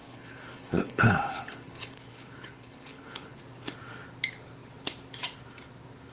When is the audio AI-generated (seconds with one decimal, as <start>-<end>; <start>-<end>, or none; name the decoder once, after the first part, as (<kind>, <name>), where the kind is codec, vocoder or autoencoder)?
0.0-3.4 (codec, HILCodec)